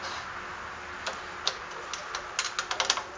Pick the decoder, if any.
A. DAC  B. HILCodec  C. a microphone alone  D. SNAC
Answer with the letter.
C